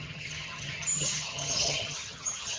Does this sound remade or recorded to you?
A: remade